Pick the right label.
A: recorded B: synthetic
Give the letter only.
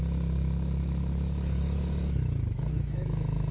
B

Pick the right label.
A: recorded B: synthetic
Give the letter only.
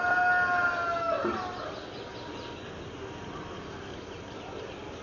A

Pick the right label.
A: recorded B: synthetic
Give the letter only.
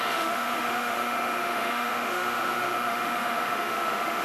B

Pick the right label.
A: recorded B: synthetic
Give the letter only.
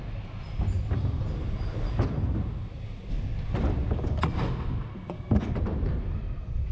A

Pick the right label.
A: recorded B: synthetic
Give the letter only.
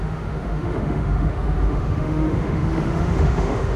B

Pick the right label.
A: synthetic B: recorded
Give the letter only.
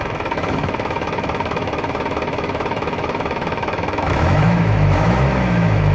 A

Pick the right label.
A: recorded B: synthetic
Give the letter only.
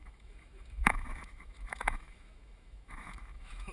B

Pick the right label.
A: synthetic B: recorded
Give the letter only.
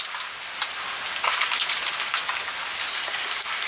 B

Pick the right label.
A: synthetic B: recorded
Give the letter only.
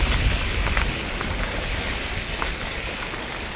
B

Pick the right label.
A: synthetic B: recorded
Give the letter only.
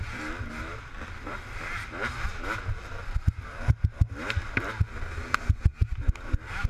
B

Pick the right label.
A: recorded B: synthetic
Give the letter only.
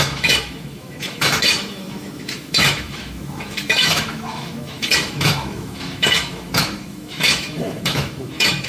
B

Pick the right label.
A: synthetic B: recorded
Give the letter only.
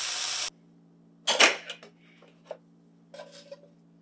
B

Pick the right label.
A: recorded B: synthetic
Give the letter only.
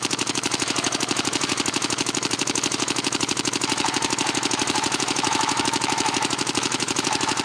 B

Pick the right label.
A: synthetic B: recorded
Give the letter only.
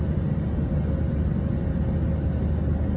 B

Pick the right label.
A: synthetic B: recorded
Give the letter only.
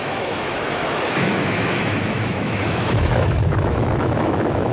A